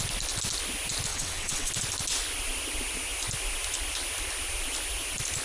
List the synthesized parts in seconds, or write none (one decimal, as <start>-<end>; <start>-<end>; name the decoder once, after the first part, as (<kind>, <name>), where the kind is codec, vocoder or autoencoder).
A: 1.1-1.7 (vocoder, WaveNeXt)